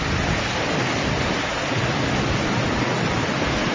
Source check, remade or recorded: recorded